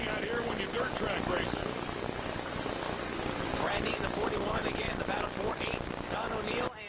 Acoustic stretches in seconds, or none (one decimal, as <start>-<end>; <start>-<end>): 0.0-6.9